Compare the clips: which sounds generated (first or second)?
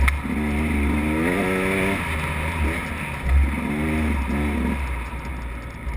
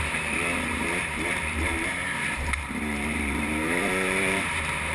second